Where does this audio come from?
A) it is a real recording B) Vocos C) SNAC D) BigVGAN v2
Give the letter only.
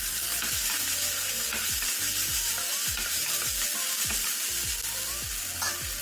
A